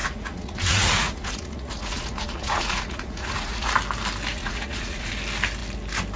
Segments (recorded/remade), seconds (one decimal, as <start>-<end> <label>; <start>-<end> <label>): 0.0-3.7 remade; 3.7-4.3 recorded; 4.3-5.1 remade; 5.1-6.2 recorded